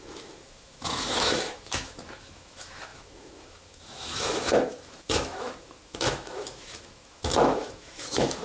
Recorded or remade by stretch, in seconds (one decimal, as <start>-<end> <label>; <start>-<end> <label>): 0.0-8.4 remade